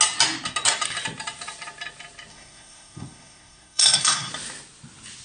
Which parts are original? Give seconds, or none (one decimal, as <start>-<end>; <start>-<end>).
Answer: 0.0-2.3; 4.3-5.2